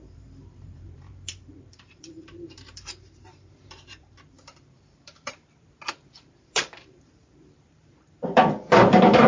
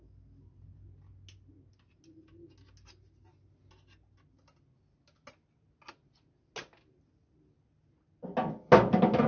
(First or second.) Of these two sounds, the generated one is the first